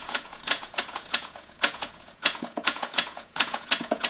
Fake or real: fake